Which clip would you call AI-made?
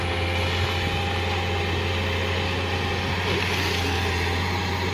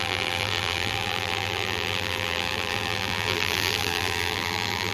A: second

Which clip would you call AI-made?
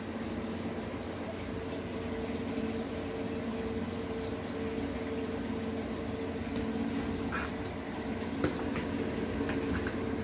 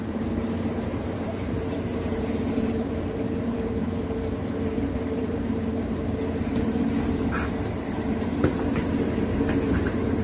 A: second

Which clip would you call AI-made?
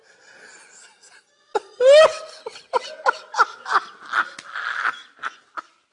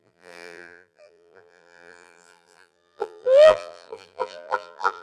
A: second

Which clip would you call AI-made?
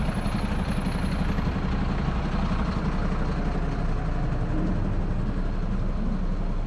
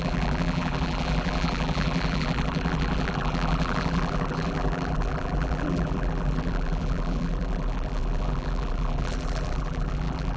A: second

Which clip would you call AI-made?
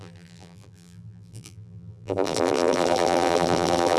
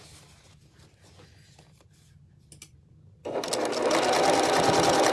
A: first